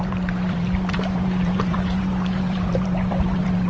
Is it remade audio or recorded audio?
remade